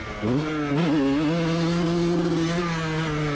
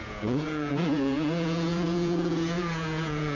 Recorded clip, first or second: first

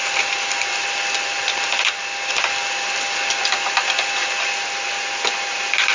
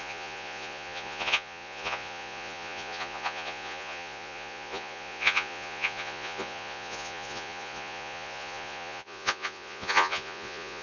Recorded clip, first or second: first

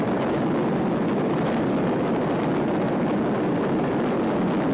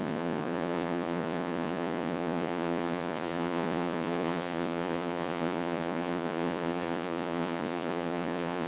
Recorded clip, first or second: first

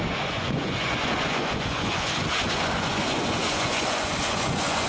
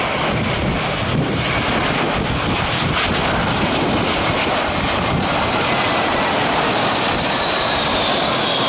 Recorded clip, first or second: second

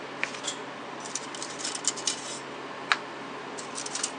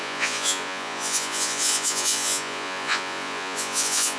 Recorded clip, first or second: first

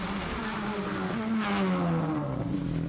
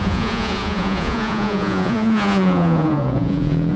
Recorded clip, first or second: first